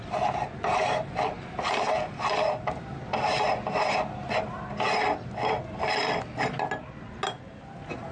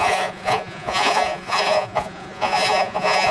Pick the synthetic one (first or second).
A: second